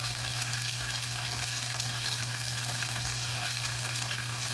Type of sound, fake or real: fake